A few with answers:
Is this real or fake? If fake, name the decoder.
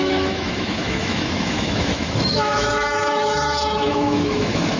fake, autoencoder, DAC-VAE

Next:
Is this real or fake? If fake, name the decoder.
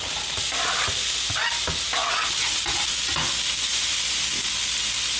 real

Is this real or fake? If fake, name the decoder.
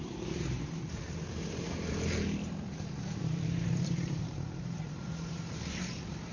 fake, vocoder, BigVGAN v2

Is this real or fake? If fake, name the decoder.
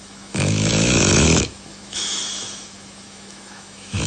fake, autoencoder, DAC-VAE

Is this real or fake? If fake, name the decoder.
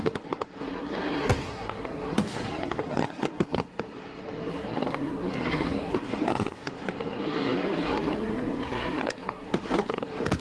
fake, codec, SNAC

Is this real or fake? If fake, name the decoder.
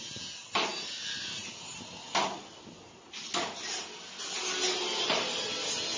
real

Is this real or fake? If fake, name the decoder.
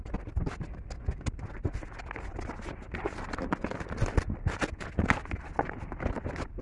real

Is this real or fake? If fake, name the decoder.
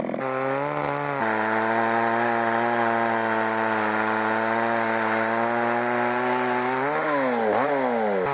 real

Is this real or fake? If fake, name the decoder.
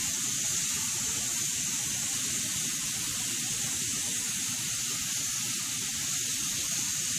real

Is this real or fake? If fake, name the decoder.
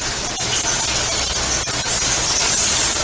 real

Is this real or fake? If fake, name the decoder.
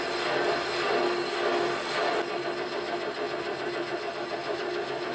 real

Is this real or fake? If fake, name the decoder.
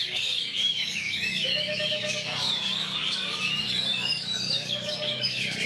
fake, codec, DAC